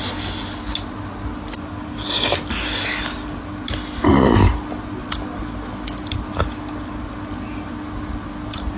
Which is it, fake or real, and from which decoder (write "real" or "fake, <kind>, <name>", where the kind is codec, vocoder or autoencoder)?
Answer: real